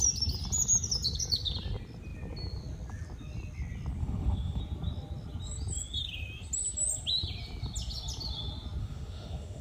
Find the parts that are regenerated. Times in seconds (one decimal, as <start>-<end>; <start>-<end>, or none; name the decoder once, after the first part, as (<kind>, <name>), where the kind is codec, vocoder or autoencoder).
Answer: 4.0-4.6 (autoencoder, DAC-VAE); 8.8-9.6